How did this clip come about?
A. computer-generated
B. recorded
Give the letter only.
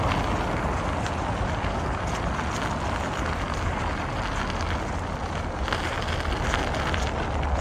B